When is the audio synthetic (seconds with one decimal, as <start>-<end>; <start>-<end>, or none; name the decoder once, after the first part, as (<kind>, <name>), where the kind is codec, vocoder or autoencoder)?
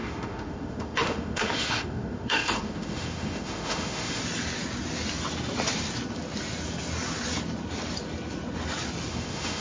0.0-4.2 (autoencoder, DAC-VAE); 9.1-9.6